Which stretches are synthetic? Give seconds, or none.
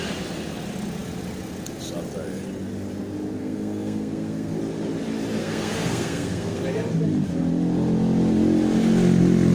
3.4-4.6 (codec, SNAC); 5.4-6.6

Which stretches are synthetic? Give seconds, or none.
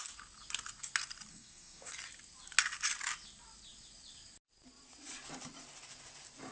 1.3-1.9 (codec, SNAC)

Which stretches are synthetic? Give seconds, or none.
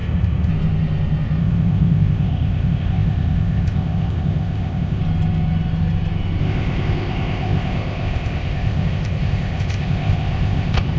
0.0-0.5 (codec, ZipCodec); 1.4-5.0; 6.4-11.0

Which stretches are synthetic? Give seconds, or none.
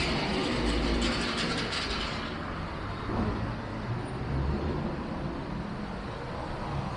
none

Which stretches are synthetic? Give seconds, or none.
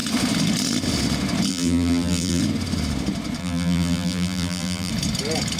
1.5-2.4 (vocoder, BigVGAN v2); 3.4-4.9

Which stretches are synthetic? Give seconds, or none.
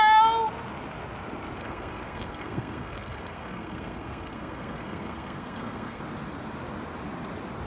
1.6-6.0 (codec, SNAC)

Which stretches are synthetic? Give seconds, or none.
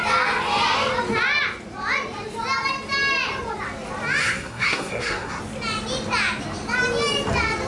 4.2-5.4 (codec, SNAC)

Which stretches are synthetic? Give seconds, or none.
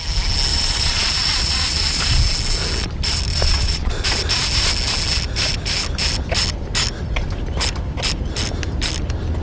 0.5-2.0 (vocoder, Vocos); 3.3-3.9